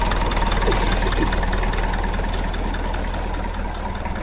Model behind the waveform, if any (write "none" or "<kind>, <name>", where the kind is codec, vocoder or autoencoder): none